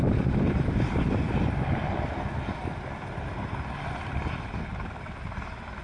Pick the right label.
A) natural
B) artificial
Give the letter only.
A